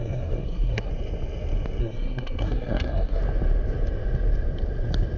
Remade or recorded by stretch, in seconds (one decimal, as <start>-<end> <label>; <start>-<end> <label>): 0.0-0.9 remade; 0.9-1.8 recorded; 1.8-3.2 remade; 3.2-5.2 recorded